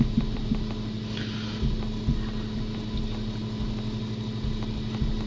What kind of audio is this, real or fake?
real